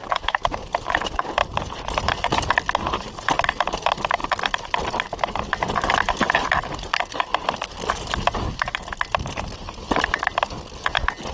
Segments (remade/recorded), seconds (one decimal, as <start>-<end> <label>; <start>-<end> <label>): 0.0-0.7 remade; 0.7-1.4 recorded; 1.4-1.9 remade; 1.9-11.3 recorded